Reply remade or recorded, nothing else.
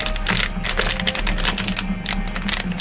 recorded